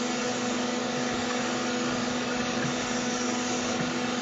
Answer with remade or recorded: remade